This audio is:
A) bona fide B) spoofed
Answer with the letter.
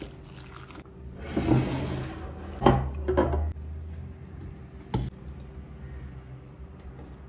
A